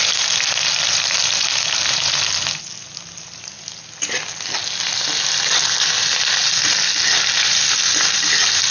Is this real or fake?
real